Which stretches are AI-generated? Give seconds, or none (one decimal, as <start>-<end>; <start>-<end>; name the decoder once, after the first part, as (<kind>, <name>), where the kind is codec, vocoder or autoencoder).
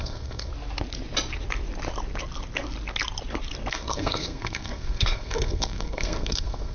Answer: 0.0-0.5 (codec, SNAC); 3.7-6.7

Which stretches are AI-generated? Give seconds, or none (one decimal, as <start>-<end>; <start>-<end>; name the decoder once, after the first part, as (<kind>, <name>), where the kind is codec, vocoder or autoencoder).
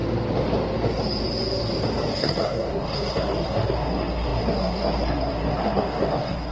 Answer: 2.2-6.5 (codec, SNAC)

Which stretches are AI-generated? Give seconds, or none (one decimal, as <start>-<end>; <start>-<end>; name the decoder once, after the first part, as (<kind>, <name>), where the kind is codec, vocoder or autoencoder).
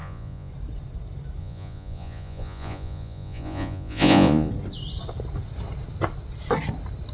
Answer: 0.0-0.5 (vocoder, Vocos); 1.4-4.5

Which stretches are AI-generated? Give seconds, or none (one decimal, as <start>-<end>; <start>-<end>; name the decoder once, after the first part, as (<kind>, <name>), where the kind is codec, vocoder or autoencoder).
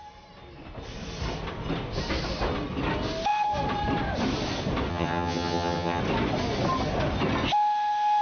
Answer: 4.9-6.0 (vocoder, HiFi-GAN)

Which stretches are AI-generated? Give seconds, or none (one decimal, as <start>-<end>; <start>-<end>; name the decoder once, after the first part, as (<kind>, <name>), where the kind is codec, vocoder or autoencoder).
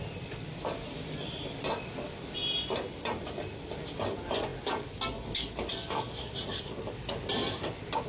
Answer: none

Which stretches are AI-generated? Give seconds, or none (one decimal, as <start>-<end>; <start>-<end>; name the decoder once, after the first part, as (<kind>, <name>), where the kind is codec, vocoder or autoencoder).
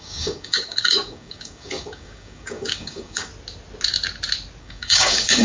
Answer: 0.0-3.3 (codec, DAC); 4.6-5.4